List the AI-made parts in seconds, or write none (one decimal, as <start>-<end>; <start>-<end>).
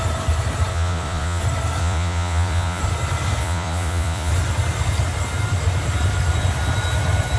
0.7-1.4; 1.8-2.8; 3.4-4.3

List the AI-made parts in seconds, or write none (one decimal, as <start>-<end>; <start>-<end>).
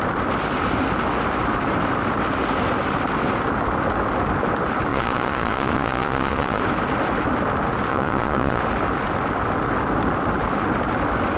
4.9-6.6; 7.9-8.6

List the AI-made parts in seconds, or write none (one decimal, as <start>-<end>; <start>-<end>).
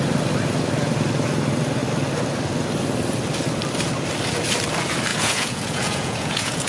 5.1-6.7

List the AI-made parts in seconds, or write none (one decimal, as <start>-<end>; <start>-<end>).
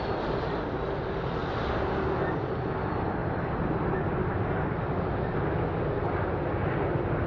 none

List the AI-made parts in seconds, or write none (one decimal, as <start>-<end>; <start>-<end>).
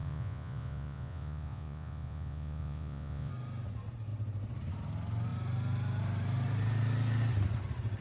0.0-3.3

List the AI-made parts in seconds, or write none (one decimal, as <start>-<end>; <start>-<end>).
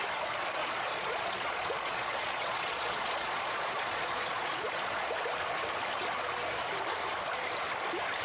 0.6-4.9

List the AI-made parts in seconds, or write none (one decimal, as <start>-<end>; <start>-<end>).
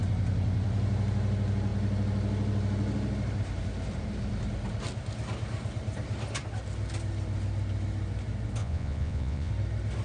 8.6-9.5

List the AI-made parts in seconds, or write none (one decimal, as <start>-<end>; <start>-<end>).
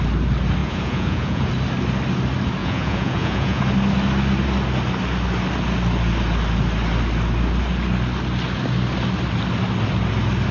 0.6-1.5; 2.6-3.6